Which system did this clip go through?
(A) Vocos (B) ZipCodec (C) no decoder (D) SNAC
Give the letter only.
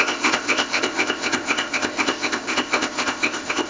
B